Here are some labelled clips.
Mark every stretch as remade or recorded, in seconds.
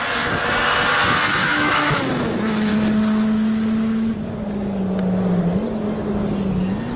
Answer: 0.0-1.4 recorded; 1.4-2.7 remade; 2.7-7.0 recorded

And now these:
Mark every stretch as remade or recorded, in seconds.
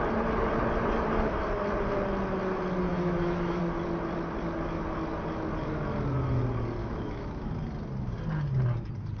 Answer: 0.0-2.9 recorded; 2.9-3.6 remade; 3.6-6.8 recorded; 6.8-7.5 remade; 7.5-9.2 recorded